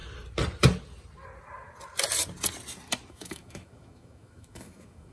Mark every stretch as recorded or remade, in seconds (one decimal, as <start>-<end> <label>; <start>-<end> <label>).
0.0-3.1 recorded; 3.1-5.1 remade